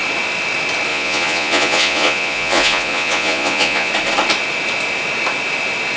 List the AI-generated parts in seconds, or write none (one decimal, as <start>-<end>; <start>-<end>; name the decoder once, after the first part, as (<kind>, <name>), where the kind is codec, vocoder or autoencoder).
0.9-3.9 (vocoder, Vocos)